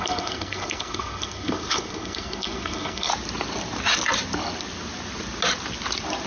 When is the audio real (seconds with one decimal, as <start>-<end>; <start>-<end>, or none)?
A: 3.1-6.3